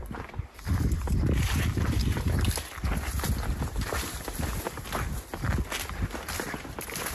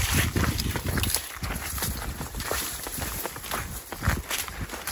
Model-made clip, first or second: second